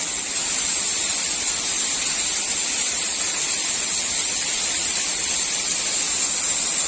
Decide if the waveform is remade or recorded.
recorded